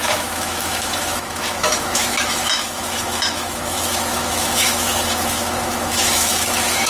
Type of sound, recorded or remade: remade